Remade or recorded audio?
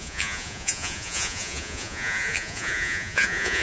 remade